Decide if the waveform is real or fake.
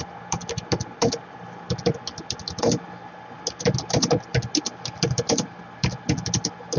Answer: real